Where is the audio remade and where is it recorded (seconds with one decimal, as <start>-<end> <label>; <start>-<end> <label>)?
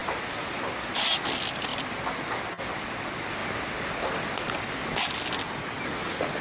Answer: 0.0-0.7 remade; 0.7-6.4 recorded